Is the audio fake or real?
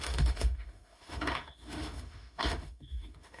fake